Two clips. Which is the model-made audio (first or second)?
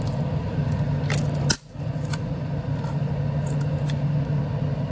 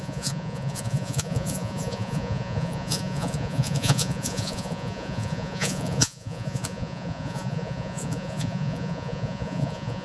second